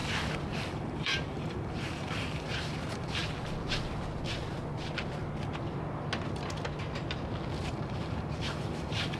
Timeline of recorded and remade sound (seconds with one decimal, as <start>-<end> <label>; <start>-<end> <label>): 0.0-0.7 recorded; 0.7-3.2 remade; 3.2-7.7 recorded; 7.7-9.2 remade